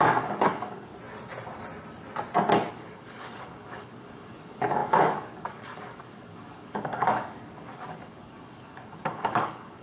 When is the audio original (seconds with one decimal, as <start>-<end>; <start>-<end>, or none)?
0.9-2.7